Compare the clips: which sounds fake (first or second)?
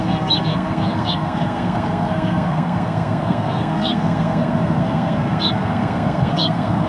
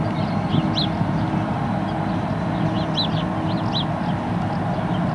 first